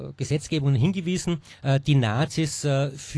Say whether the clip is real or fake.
real